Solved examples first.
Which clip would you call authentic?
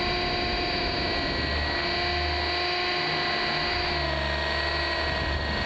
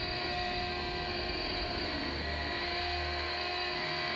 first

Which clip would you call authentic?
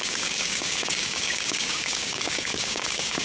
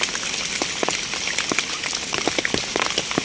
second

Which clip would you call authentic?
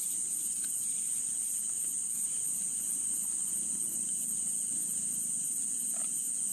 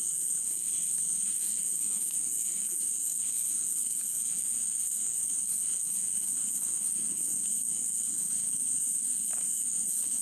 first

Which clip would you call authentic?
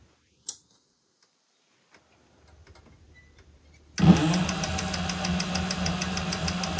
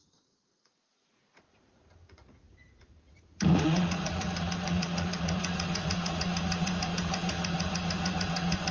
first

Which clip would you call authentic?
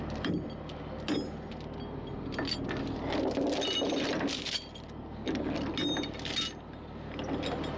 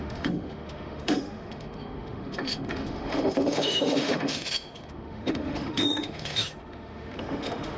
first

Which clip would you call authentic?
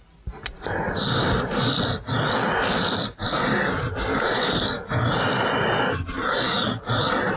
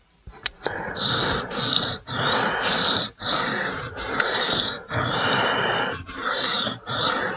first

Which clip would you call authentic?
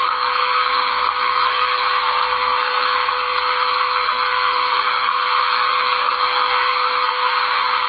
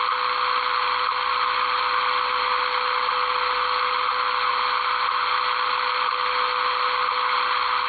second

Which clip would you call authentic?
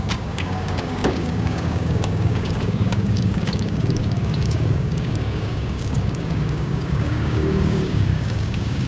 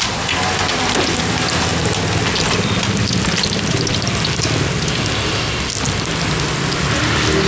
second